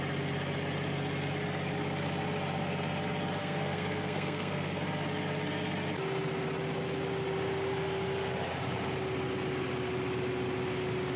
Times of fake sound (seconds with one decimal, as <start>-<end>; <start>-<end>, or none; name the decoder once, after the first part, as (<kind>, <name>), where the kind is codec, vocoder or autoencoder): 3.4-4.8 (codec, SNAC)